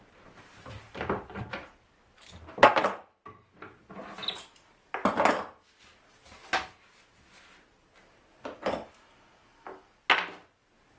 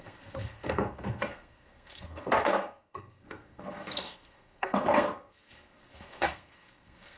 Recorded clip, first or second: first